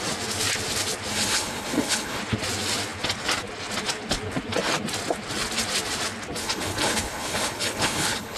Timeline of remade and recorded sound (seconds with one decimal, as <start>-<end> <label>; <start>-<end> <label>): 0.0-1.1 recorded; 1.1-2.2 remade; 2.2-6.4 recorded; 6.4-8.4 remade